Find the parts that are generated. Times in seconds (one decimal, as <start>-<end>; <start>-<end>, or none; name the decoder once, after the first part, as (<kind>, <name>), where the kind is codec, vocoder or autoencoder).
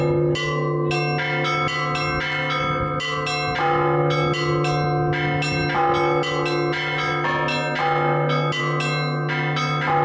none